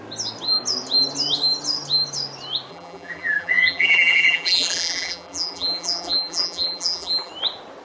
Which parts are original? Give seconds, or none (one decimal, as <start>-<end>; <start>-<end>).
0.0-2.7; 7.3-7.8